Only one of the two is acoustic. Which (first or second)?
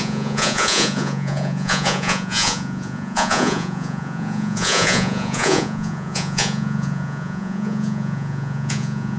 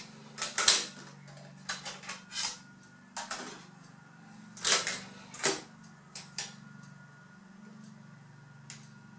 second